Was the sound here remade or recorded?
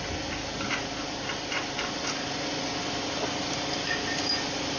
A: recorded